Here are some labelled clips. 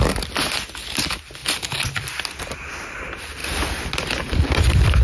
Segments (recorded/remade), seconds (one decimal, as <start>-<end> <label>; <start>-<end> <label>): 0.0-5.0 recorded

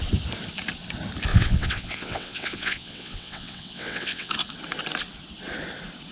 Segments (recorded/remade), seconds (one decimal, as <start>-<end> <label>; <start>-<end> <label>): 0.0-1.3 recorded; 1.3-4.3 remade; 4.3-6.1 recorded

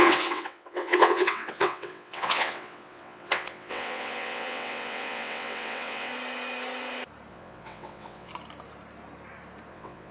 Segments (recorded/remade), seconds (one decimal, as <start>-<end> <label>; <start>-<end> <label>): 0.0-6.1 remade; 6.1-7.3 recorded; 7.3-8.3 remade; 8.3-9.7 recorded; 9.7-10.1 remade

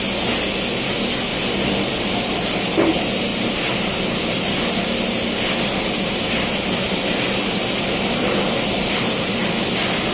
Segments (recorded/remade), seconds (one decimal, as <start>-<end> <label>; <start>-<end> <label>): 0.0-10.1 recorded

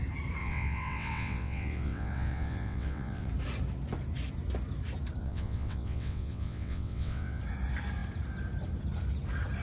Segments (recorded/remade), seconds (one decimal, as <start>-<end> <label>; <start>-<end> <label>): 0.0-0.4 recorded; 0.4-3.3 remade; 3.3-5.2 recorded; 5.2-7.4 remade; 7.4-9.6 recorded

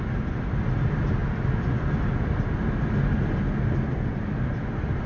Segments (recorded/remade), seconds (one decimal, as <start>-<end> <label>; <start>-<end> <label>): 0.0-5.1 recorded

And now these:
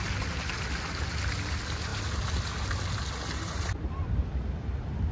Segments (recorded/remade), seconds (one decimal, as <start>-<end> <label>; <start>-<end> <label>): 0.0-5.1 recorded

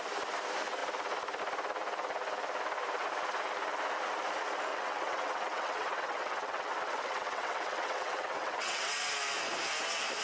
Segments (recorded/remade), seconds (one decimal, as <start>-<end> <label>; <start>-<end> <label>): 0.0-4.7 recorded; 4.7-8.9 remade; 8.9-10.2 recorded